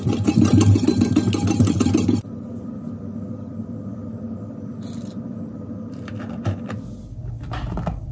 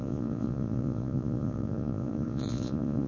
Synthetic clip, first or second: second